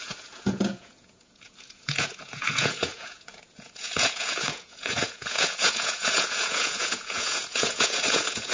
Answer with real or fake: fake